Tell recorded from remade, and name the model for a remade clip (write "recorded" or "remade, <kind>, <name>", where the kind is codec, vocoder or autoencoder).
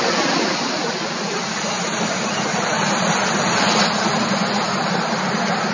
recorded